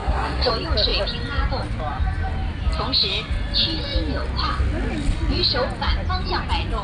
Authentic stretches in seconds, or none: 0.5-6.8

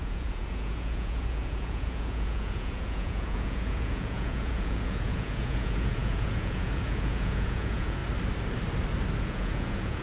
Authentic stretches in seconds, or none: 8.0-9.2

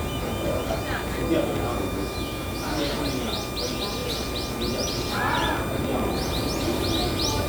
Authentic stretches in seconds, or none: 0.0-1.7; 3.0-7.5

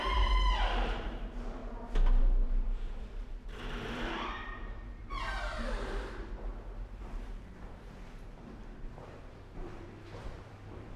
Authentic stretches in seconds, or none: 1.6-2.2; 6.5-7.0

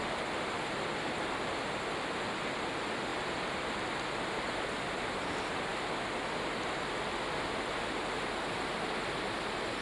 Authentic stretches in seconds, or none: 0.0-9.8

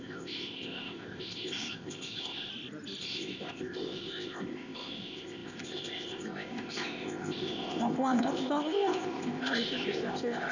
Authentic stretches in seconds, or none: 2.5-3.0

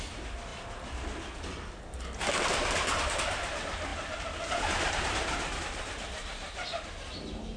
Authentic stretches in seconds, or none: 0.0-7.6

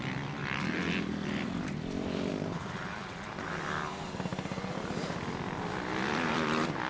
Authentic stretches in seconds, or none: 4.3-6.3